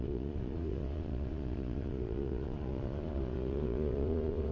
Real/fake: fake